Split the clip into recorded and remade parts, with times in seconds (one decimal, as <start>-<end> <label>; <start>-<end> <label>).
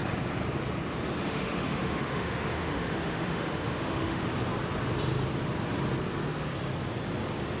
0.0-1.2 recorded; 1.2-4.2 remade; 4.2-7.6 recorded